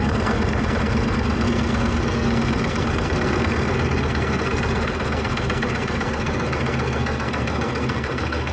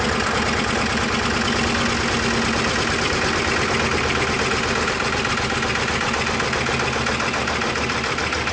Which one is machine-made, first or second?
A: first